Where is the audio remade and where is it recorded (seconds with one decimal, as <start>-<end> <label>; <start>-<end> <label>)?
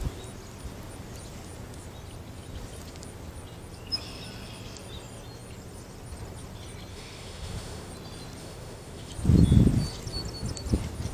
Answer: 0.0-6.9 recorded; 6.9-7.9 remade; 7.9-8.4 recorded; 8.4-9.1 remade; 9.1-11.1 recorded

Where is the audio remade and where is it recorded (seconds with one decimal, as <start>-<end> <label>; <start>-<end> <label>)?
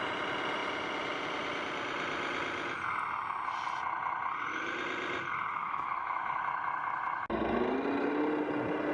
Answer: 0.0-5.6 recorded; 5.6-6.4 remade; 6.4-8.9 recorded